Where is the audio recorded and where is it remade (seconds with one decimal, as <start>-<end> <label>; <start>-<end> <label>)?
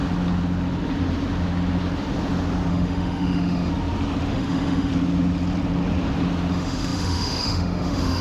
0.0-2.7 recorded; 2.7-3.7 remade; 3.7-4.3 recorded; 4.3-4.9 remade; 4.9-6.5 recorded; 6.5-8.2 remade